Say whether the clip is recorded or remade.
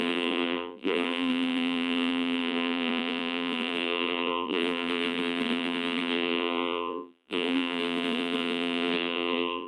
remade